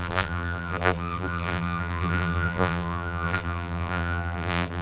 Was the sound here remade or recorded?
remade